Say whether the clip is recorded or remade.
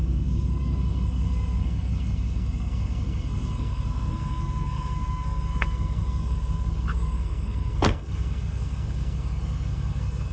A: remade